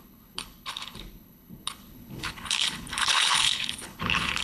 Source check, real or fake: fake